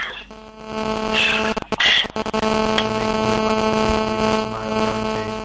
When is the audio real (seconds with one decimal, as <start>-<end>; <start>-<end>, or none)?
0.0-5.4